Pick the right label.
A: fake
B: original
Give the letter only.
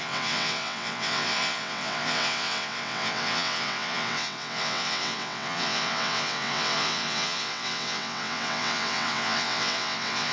A